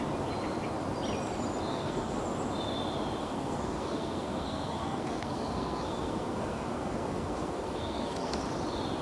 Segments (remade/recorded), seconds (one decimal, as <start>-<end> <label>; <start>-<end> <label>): 0.0-1.7 recorded; 1.7-2.2 remade; 2.2-3.2 recorded; 3.2-8.4 remade; 8.4-9.0 recorded